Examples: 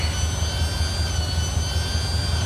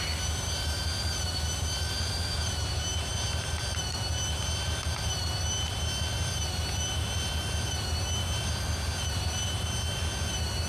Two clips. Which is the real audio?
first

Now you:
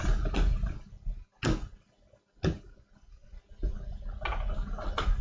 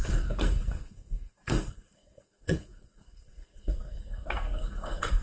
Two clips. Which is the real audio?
first